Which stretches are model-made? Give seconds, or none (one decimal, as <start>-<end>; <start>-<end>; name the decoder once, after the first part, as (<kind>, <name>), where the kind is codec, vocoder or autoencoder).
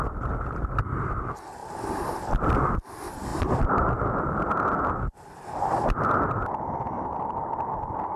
0.0-8.2 (vocoder, BigVGAN v2)